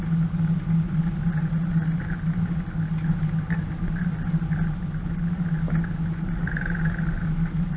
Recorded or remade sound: recorded